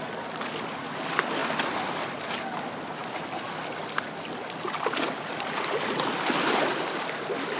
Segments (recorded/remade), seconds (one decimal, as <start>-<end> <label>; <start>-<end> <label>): 0.0-7.6 recorded